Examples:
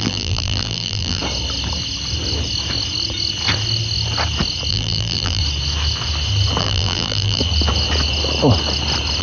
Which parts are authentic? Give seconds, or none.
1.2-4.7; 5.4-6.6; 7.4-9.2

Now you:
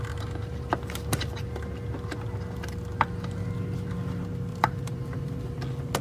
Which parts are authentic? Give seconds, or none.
0.0-4.5; 5.6-6.0

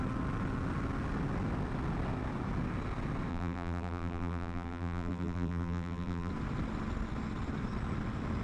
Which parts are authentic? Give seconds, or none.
0.0-3.3; 6.3-8.4

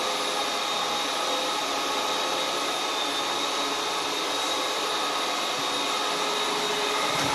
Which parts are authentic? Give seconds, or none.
0.0-1.6; 4.9-7.3